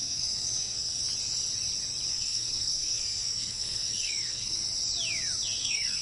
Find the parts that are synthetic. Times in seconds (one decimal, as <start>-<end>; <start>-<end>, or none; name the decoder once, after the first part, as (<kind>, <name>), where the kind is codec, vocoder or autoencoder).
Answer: 0.0-1.0 (codec, SNAC); 2.1-4.6; 5.6-6.0